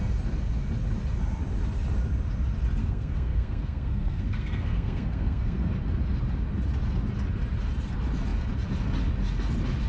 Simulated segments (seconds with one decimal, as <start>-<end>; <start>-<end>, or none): 2.8-5.7